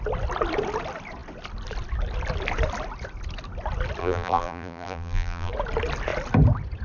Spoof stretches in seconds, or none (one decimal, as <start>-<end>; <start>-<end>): 4.0-5.5